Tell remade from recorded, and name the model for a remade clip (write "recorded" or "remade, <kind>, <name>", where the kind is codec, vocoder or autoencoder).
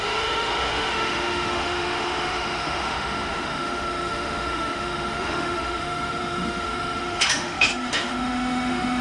remade, autoencoder, DAC-VAE